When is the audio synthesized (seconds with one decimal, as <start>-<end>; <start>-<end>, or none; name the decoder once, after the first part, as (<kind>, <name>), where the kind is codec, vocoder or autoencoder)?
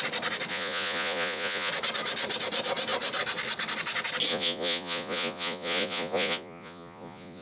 0.5-1.7 (vocoder, Vocos); 4.3-7.4